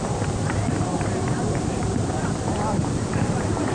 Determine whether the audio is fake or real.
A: fake